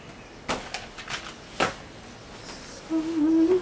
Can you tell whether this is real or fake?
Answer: real